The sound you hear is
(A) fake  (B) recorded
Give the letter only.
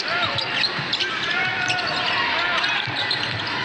B